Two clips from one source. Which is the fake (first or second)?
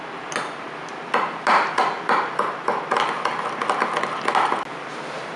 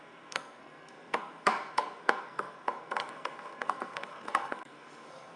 second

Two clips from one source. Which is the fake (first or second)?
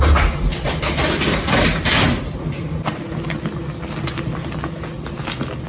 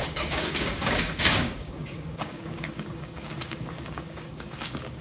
second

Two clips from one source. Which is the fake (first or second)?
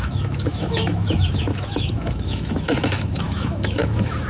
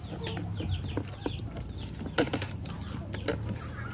first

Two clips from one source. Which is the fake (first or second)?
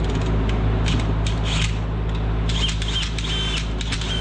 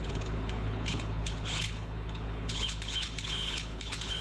second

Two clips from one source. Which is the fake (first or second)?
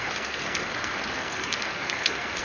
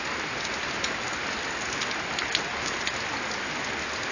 first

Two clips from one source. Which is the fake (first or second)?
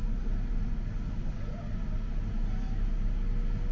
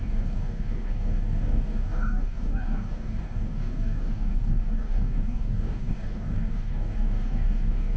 second